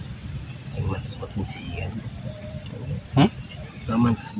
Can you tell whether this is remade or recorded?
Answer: recorded